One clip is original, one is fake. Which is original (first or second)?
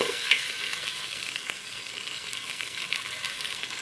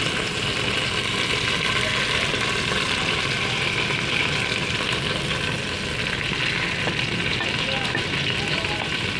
second